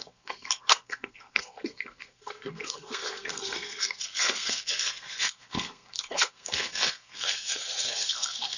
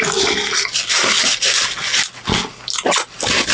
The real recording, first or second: second